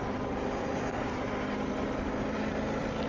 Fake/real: real